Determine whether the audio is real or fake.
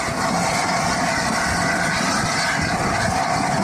real